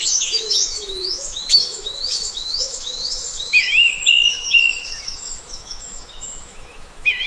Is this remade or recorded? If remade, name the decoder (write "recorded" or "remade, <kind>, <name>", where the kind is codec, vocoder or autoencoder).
remade, autoencoder, DAC-VAE